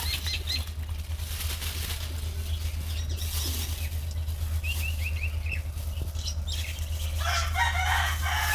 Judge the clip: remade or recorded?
recorded